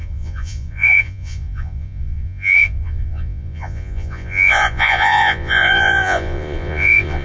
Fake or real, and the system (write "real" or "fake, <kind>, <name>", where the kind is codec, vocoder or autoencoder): fake, vocoder, Vocos